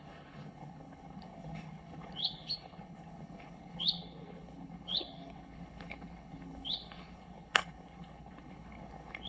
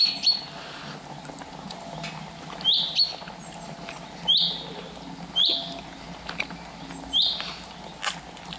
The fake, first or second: first